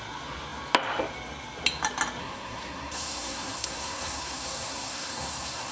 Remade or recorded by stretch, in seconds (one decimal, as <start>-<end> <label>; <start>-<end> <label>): 0.0-2.2 recorded; 2.2-5.7 remade